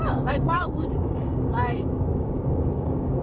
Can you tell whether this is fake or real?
fake